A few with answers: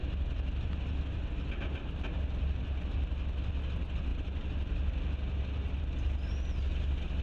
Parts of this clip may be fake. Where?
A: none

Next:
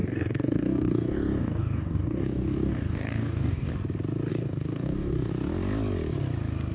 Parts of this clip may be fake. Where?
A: 0.0-3.7 (codec, DAC); 4.3-5.3

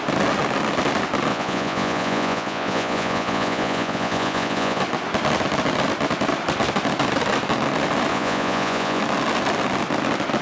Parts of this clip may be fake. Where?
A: 1.3-4.8 (vocoder, Vocos); 8.1-9.0

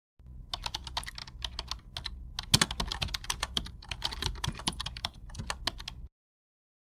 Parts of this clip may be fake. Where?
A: 2.9-5.4 (vocoder, BigVGAN v2)

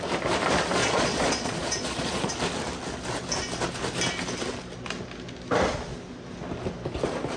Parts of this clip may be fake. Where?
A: 0.8-2.3 (vocoder, Vocos)

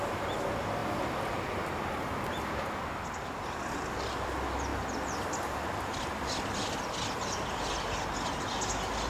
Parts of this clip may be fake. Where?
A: none